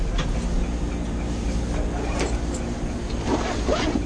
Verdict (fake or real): real